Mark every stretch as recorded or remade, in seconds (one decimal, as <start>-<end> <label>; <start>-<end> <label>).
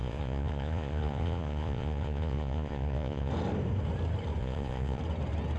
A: 0.0-3.3 remade; 3.3-4.4 recorded; 4.4-5.0 remade; 5.0-5.6 recorded